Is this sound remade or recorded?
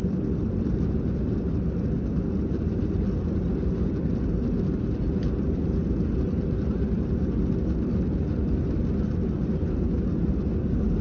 recorded